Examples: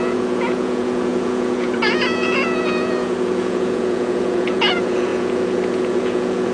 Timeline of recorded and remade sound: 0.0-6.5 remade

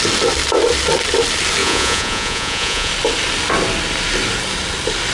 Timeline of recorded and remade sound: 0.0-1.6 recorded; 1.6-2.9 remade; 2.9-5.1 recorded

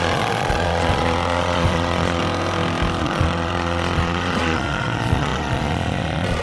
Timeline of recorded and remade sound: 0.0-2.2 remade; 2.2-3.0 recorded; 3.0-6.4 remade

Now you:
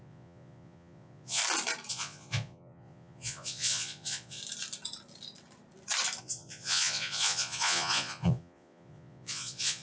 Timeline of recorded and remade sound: 0.0-1.4 remade; 1.4-1.9 recorded; 1.9-4.4 remade; 4.4-6.2 recorded; 6.2-9.8 remade